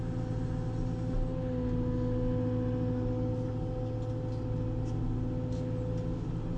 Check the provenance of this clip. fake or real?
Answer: real